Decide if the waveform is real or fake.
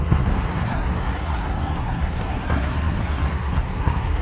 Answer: fake